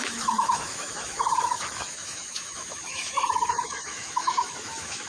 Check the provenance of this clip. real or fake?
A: fake